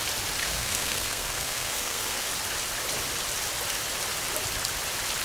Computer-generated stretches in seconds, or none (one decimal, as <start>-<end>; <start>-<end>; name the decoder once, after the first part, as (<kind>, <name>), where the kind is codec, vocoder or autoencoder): 0.4-2.3 (codec, SNAC)